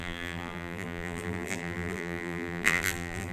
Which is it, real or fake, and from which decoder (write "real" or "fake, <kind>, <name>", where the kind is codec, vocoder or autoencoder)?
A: fake, vocoder, BigVGAN v2